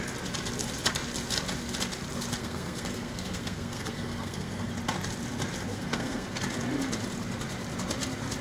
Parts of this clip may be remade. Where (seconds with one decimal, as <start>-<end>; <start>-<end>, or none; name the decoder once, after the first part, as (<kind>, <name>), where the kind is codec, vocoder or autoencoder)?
2.4-4.7 (codec, SNAC); 5.7-6.4